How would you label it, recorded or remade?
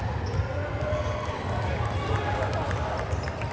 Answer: recorded